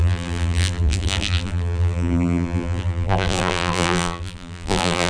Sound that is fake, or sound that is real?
fake